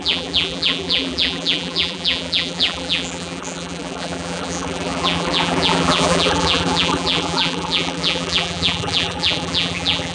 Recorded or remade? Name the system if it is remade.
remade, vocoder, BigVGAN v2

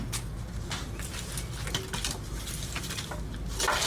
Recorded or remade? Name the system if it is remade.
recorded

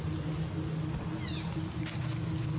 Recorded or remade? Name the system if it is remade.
recorded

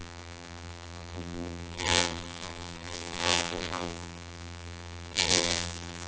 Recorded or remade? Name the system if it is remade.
remade, vocoder, BigVGAN v2